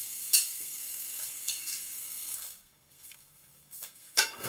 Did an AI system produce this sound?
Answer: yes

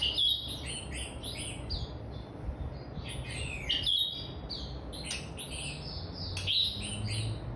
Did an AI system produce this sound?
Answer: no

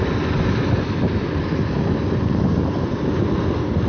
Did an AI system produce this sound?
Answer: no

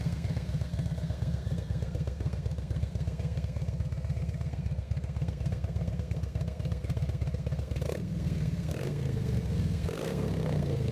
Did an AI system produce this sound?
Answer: yes